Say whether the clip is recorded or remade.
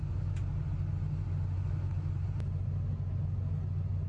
recorded